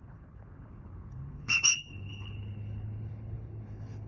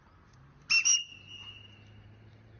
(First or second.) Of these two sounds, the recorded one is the second